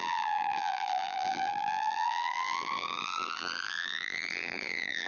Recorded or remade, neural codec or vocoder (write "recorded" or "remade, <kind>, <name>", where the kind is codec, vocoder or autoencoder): remade, vocoder, BigVGAN v2